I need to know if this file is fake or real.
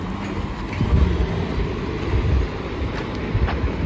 real